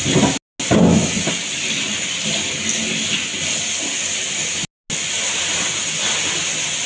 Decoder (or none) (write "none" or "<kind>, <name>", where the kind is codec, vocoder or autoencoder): none